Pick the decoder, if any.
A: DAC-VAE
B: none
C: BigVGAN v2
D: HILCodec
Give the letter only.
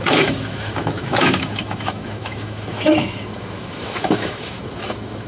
A